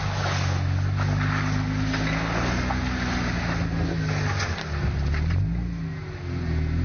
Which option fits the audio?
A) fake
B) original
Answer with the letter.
B